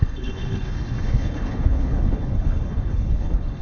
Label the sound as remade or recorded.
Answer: remade